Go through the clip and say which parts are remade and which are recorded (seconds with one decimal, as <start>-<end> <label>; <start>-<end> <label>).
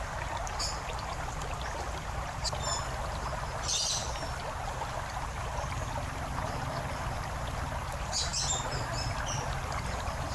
0.0-10.3 recorded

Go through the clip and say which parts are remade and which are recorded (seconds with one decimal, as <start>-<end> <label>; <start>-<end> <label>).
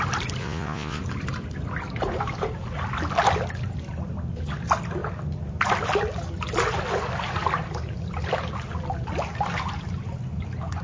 0.0-0.4 recorded; 0.4-1.0 remade; 1.0-10.8 recorded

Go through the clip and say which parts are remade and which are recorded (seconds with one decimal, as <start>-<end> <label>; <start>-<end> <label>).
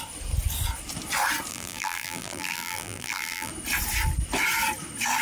0.0-1.5 recorded; 1.5-3.5 remade; 3.5-5.2 recorded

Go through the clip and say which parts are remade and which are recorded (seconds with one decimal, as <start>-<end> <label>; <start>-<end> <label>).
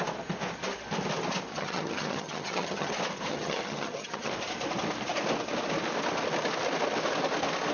0.0-1.5 recorded; 1.5-2.9 remade; 2.9-3.3 recorded; 3.3-4.3 remade; 4.3-7.7 recorded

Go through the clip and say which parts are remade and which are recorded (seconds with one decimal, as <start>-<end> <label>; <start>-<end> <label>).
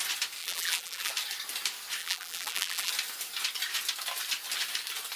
0.0-0.4 recorded; 0.4-1.1 remade; 1.1-2.0 recorded; 2.0-2.9 remade; 2.9-5.2 recorded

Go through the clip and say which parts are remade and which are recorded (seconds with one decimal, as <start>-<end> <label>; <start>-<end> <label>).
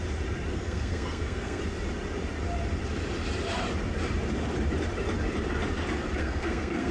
0.0-0.5 recorded; 0.5-1.6 remade; 1.6-6.2 recorded; 6.2-6.9 remade